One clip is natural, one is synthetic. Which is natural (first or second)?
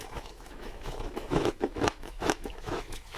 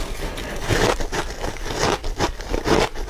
second